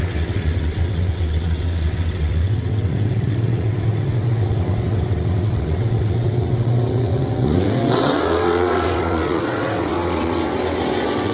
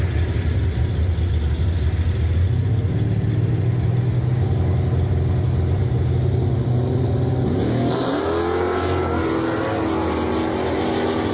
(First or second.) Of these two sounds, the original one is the second